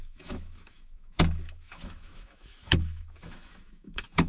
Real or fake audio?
fake